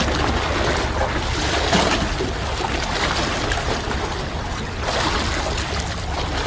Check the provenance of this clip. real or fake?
real